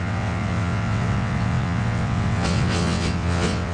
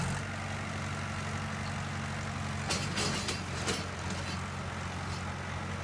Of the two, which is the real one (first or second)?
second